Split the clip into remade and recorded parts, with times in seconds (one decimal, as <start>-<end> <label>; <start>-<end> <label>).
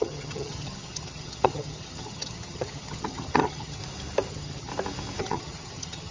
0.0-3.8 remade; 3.8-4.3 recorded; 4.3-4.7 remade; 4.7-5.2 recorded; 5.2-6.1 remade